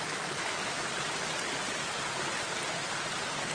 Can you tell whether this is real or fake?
real